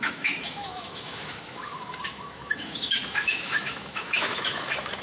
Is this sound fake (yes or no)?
yes